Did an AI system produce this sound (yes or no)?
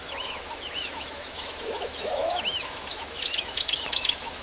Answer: yes